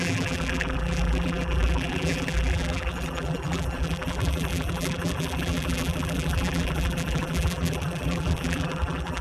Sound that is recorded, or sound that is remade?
remade